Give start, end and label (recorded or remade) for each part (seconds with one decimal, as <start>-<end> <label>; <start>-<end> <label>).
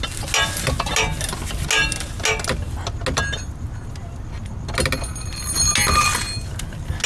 0.0-7.1 recorded